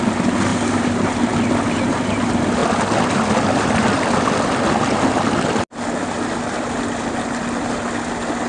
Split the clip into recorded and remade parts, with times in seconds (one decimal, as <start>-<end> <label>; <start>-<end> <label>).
0.0-8.5 recorded